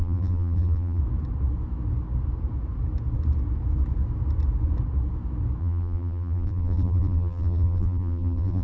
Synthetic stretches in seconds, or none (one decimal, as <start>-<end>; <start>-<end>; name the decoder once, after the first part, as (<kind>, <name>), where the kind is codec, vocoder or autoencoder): 0.0-1.0 (vocoder, BigVGAN v2); 5.6-8.6